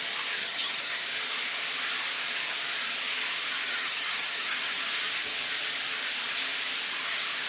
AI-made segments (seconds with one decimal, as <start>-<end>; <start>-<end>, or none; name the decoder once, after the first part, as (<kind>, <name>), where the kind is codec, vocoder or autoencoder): 0.4-1.0 (vocoder, HiFi-GAN); 3.6-4.9